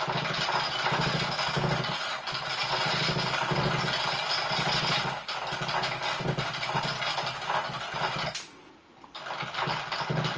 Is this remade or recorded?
recorded